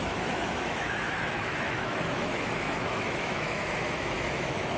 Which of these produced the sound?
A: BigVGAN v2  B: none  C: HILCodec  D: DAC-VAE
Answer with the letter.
D